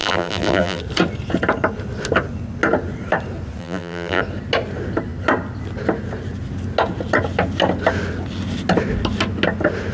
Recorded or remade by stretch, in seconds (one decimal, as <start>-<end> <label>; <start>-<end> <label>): 0.0-0.8 remade; 0.8-3.6 recorded; 3.6-4.2 remade; 4.2-9.9 recorded